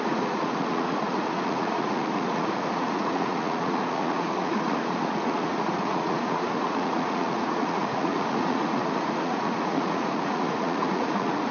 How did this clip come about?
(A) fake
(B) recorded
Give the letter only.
A